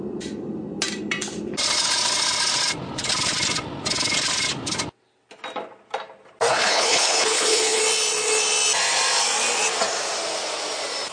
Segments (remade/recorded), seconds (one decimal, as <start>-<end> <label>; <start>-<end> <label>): 0.0-6.5 recorded; 6.5-7.8 remade; 7.8-11.1 recorded

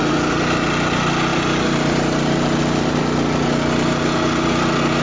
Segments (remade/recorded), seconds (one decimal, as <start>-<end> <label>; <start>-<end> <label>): 0.0-1.3 recorded; 1.3-3.0 remade; 3.0-5.0 recorded

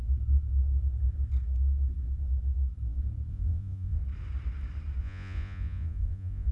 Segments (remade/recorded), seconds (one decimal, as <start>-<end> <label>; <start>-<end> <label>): 0.0-3.3 recorded; 3.3-4.0 remade; 4.0-5.0 recorded; 5.0-6.5 remade

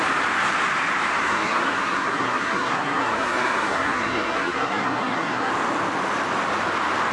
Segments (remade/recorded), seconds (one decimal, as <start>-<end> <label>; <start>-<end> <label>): 0.0-1.2 recorded; 1.2-5.5 remade; 5.5-7.1 recorded

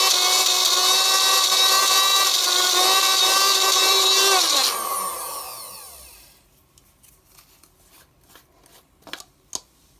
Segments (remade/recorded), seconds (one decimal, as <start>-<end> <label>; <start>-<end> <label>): 0.0-10.0 recorded

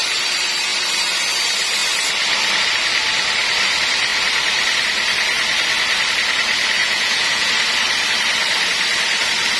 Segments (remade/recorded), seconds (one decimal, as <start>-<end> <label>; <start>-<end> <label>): 0.0-6.8 recorded; 6.8-7.5 remade; 7.5-9.6 recorded

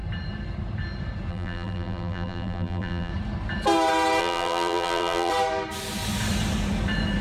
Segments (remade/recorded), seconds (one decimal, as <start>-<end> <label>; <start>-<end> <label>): 0.0-1.3 recorded; 1.3-3.1 remade; 3.1-4.2 recorded; 4.2-5.3 remade; 5.3-7.2 recorded

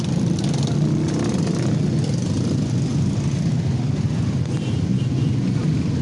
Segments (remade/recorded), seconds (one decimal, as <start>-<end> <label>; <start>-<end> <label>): 0.0-4.9 recorded; 4.9-5.6 remade; 5.6-6.0 recorded